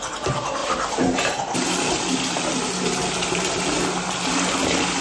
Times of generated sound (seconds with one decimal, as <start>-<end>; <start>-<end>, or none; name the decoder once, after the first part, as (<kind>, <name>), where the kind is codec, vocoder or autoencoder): none